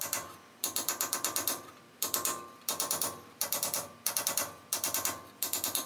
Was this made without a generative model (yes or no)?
no